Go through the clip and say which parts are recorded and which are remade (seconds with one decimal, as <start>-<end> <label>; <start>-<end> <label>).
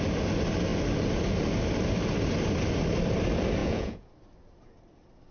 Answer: 0.0-3.6 recorded; 3.6-4.1 remade; 4.1-5.3 recorded